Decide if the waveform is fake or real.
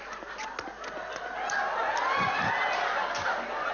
real